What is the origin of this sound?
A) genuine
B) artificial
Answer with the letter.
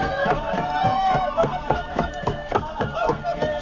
B